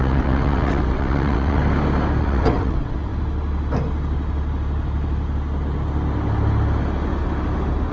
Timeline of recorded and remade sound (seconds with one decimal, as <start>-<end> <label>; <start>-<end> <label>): 0.0-1.6 remade; 1.6-2.2 recorded; 2.2-3.1 remade; 3.1-7.9 recorded